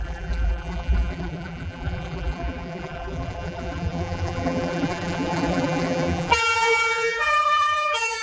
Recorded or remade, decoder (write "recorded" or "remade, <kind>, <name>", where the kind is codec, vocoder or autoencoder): remade, vocoder, BigVGAN v2